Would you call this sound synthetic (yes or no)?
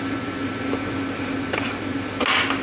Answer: no